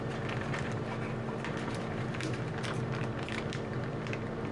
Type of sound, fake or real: fake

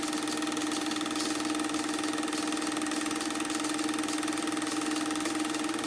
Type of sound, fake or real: real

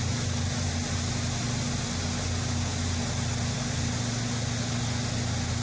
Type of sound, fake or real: real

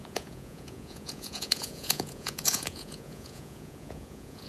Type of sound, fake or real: fake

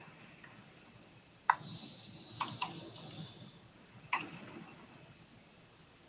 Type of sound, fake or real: fake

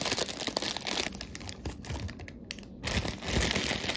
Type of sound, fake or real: real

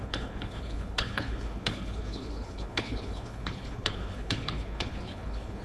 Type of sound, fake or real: fake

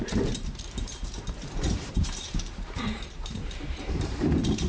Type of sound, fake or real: fake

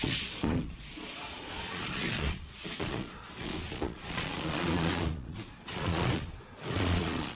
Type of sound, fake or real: fake